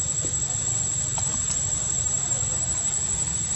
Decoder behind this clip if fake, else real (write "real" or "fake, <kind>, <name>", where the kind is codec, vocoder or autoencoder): real